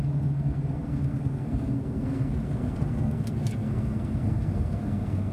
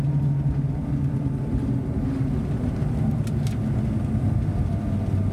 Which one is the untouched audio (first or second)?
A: second